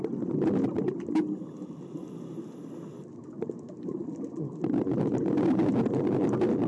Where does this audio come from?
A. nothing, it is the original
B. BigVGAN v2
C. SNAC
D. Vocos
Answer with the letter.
A